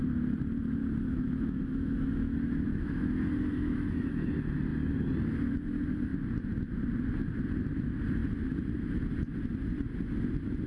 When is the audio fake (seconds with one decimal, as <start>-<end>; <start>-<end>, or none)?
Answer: 0.8-4.3